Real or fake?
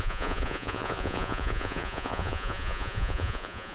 fake